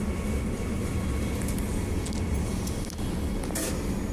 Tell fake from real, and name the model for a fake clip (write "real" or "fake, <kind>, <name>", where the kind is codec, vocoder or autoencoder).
real